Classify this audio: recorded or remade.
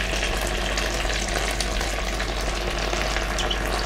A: recorded